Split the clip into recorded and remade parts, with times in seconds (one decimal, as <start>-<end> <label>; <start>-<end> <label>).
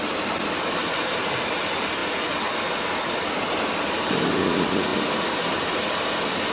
0.0-6.5 recorded